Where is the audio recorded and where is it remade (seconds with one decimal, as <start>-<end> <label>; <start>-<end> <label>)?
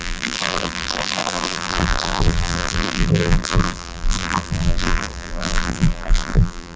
0.0-6.8 remade